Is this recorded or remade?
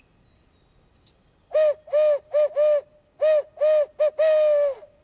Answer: recorded